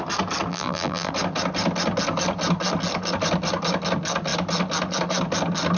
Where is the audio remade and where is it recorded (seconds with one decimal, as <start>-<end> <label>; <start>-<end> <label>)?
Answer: 0.0-0.5 recorded; 0.5-1.1 remade; 1.1-5.8 recorded

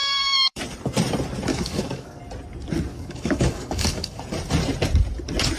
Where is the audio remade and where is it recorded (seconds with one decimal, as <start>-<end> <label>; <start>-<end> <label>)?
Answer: 0.0-0.6 remade; 0.6-1.5 recorded; 1.5-2.2 remade; 2.2-2.9 recorded; 2.9-4.2 remade; 4.2-5.6 recorded

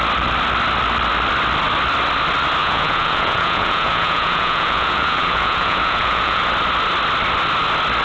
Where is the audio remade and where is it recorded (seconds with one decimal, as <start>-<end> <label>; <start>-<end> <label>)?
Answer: 0.0-2.6 recorded; 2.6-6.4 remade; 6.4-8.0 recorded

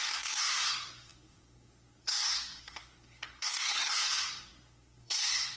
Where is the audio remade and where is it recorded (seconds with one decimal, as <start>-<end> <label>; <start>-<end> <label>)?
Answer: 0.0-5.6 remade